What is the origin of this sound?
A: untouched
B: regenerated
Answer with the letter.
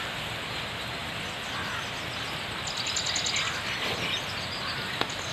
A